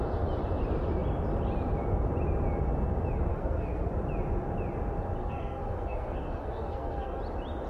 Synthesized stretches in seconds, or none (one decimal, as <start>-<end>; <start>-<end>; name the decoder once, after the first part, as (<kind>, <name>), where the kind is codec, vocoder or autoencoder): 3.3-3.9 (codec, SNAC); 5.2-7.2